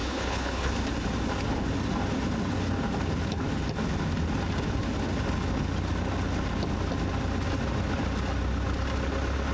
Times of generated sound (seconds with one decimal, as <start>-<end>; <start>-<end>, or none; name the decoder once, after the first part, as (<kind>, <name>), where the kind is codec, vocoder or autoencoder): 0.0-0.7 (codec, HILCodec)